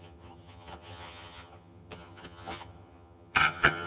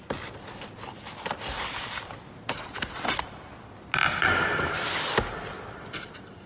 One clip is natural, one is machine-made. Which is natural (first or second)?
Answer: second